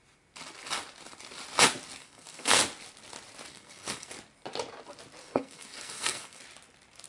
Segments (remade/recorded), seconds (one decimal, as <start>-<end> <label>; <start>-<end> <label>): 0.0-2.0 recorded; 2.0-2.6 remade; 2.6-3.5 recorded; 3.5-4.1 remade; 4.1-5.2 recorded; 5.2-6.4 remade; 6.4-7.1 recorded